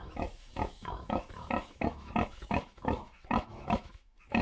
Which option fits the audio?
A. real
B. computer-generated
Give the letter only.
B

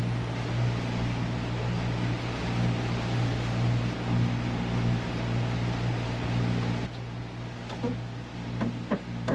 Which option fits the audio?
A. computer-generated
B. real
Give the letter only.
B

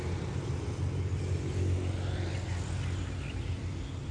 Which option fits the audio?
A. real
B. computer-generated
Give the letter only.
A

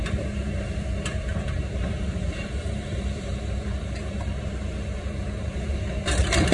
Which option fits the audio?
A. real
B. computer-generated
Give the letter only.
B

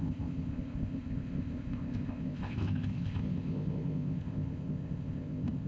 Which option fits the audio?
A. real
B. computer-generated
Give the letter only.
B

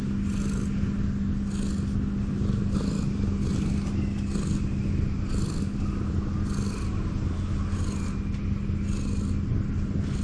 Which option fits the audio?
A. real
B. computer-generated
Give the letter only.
A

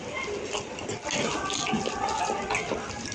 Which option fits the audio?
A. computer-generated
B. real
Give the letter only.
B